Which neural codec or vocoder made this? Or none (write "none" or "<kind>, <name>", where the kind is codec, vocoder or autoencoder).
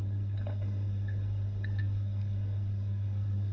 codec, SNAC